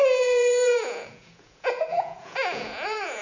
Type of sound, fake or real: fake